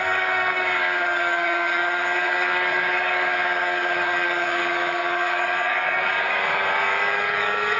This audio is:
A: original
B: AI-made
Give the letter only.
B